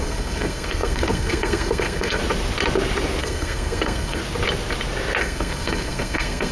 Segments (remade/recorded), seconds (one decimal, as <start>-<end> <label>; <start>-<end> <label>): 0.0-2.2 remade; 2.2-3.2 recorded; 3.2-4.2 remade; 4.2-5.2 recorded; 5.2-6.5 remade